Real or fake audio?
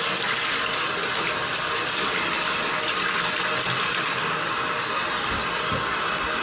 real